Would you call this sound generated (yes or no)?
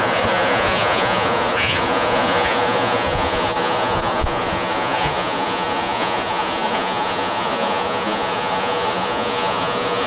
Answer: yes